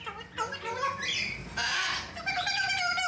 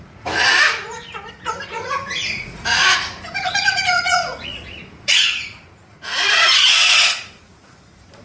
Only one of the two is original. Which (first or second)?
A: first